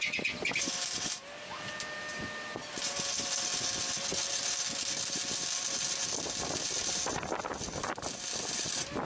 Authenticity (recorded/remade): recorded